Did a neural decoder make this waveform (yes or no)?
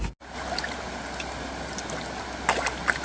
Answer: no